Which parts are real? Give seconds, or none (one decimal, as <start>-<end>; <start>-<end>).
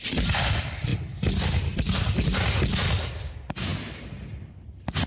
0.0-5.1